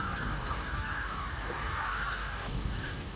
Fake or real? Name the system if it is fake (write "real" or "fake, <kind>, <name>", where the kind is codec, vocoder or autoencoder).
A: fake, codec, DAC